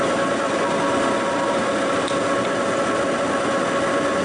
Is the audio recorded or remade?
recorded